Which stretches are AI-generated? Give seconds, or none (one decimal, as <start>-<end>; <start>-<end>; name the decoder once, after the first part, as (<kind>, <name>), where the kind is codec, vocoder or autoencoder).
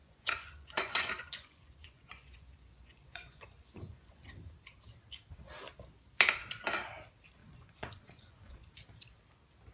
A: 0.0-4.2 (vocoder, Vocos); 7.4-8.7